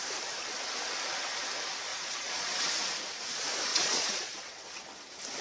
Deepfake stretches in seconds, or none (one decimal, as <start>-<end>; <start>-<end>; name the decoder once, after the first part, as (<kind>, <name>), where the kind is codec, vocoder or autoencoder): 1.9-2.6 (vocoder, Vocos); 3.7-4.7